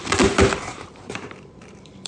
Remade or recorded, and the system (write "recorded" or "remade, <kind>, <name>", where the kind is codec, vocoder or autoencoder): remade, vocoder, BigVGAN v2